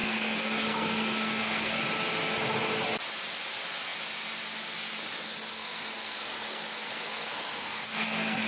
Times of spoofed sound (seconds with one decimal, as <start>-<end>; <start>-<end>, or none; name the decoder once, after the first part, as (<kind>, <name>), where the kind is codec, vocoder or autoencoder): 0.0-1.8 (codec, SNAC); 5.5-8.5